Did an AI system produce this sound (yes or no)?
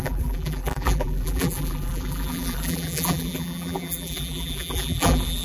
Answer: yes